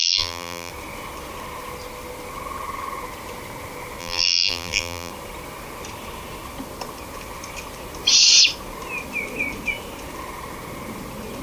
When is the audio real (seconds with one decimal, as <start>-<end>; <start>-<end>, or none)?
0.7-4.0; 5.1-11.4